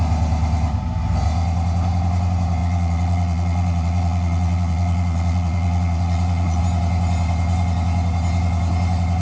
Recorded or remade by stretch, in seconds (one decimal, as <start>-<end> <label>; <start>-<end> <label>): 0.0-2.6 recorded; 2.6-6.6 remade; 6.6-9.2 recorded